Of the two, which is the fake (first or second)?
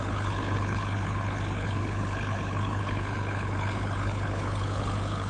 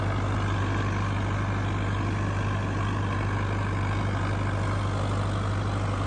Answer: first